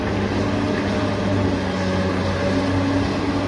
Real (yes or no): yes